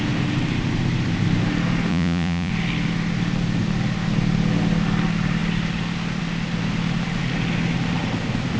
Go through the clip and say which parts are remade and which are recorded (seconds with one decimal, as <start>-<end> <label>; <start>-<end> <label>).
0.0-1.9 recorded; 1.9-2.5 remade; 2.5-8.6 recorded